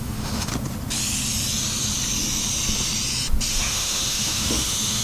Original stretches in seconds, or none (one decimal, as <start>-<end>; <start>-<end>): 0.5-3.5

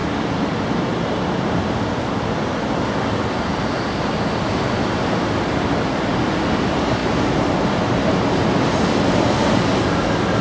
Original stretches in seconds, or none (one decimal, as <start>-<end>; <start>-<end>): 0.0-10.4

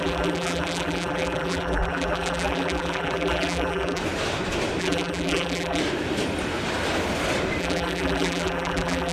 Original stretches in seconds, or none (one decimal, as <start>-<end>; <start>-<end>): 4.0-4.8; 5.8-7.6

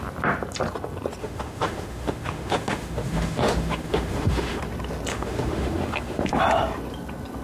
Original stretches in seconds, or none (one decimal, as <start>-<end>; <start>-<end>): 0.0-1.2; 4.6-5.1; 6.4-7.4

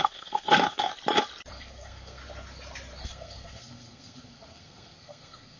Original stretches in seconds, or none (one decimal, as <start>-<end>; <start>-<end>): 0.9-1.5; 2.2-3.0